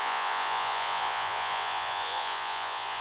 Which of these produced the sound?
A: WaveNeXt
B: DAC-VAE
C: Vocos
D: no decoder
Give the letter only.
C